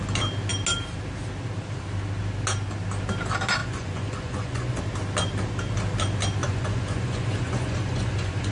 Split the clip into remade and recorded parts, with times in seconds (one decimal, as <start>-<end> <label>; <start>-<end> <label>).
0.0-3.6 recorded; 3.6-4.8 remade; 4.8-6.4 recorded; 6.4-8.5 remade